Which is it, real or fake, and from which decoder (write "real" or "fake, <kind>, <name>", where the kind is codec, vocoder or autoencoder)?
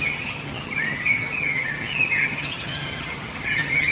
fake, vocoder, HiFi-GAN